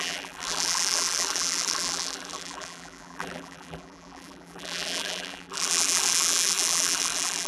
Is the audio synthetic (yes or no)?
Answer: yes